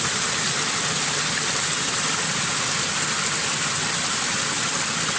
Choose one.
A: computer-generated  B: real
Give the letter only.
B